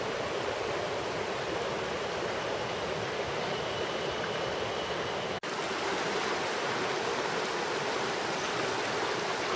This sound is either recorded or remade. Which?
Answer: recorded